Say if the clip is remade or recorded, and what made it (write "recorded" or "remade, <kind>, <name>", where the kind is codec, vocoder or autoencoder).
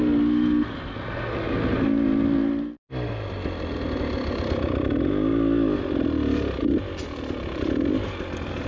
recorded